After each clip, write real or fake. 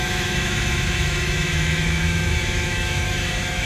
fake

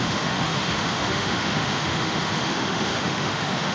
fake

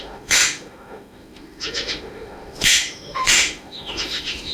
fake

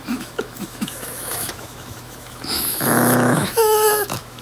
fake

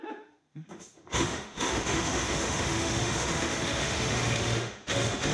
fake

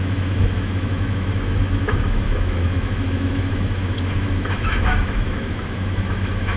fake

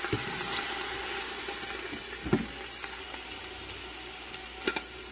real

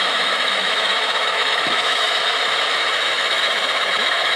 fake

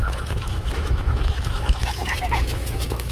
fake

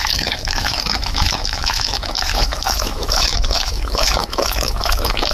fake